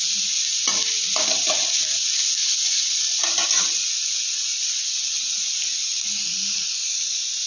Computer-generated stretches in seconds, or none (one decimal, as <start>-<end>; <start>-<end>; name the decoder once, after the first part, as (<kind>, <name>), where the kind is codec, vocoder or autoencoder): 2.4-3.2 (vocoder, WaveNeXt); 4.5-5.4